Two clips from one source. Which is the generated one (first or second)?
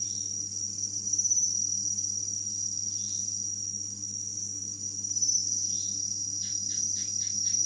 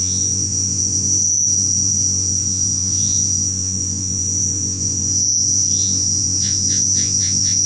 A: second